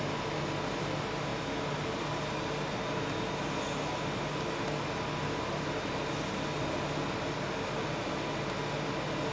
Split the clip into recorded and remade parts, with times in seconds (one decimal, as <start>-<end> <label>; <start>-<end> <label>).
0.0-9.3 recorded